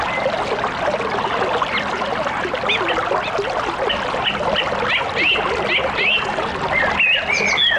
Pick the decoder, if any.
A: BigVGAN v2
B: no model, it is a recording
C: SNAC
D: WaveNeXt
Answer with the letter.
B